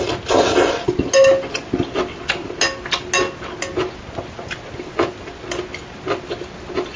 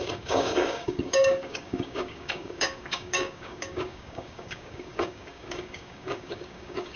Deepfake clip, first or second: second